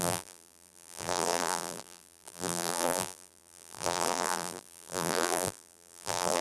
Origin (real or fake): fake